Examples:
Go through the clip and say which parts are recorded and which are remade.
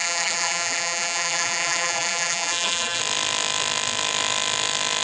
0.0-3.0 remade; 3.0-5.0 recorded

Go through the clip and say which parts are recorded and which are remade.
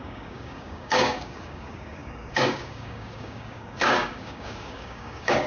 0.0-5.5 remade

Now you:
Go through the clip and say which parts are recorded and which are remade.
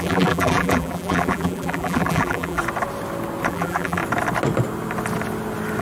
0.0-2.6 remade; 2.6-3.5 recorded; 3.5-4.0 remade; 4.0-5.8 recorded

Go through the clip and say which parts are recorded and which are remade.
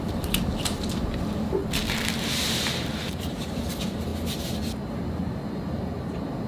0.0-1.6 remade; 1.6-2.2 recorded; 2.2-4.1 remade; 4.1-6.5 recorded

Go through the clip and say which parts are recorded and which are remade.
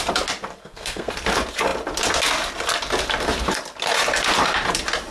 0.0-0.6 recorded; 0.6-1.1 remade; 1.1-5.1 recorded